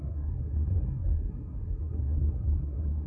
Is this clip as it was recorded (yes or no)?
no